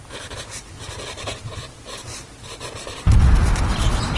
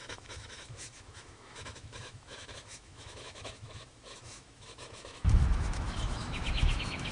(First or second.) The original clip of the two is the first